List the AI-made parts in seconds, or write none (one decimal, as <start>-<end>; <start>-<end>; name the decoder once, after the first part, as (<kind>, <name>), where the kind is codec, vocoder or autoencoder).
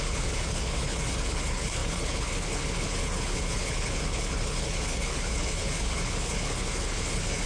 0.0-7.5 (codec, HILCodec)